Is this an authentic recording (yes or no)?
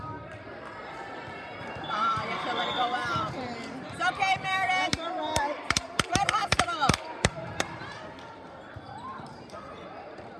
no